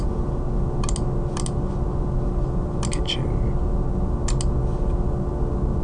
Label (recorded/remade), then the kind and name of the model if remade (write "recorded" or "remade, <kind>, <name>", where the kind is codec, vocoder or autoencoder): recorded